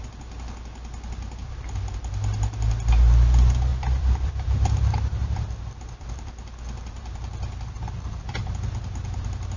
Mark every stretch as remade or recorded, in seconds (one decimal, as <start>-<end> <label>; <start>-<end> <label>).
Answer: 0.0-1.4 recorded; 1.4-2.1 remade; 2.1-3.7 recorded; 3.7-8.4 remade; 8.4-9.6 recorded